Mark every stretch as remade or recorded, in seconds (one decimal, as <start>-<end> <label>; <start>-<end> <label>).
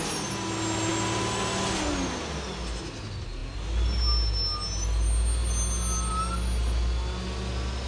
0.0-7.9 recorded